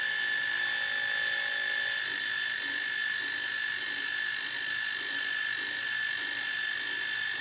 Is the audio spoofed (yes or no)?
no